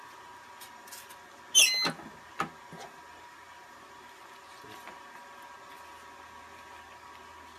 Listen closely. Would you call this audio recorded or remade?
recorded